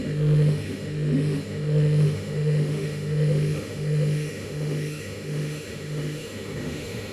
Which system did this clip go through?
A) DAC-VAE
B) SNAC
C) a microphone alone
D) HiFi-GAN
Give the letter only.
A